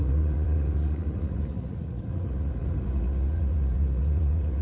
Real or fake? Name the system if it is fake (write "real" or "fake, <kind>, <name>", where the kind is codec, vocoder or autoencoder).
fake, vocoder, Vocos